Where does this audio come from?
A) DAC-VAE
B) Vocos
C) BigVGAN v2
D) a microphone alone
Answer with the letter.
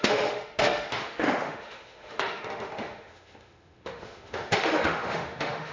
A